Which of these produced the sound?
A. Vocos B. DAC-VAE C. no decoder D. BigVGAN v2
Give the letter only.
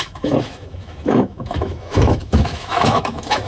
B